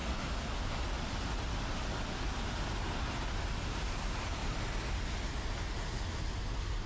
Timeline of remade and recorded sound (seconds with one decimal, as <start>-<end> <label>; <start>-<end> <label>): 0.0-6.9 recorded